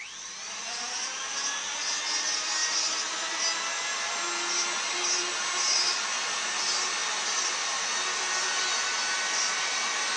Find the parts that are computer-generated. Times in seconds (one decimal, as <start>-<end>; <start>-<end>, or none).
none